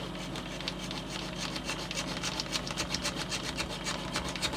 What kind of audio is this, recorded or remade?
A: recorded